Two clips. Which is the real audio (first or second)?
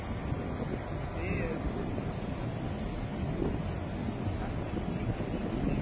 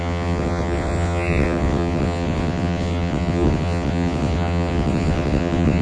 first